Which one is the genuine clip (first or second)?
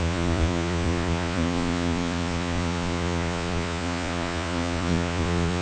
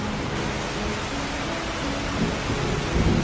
second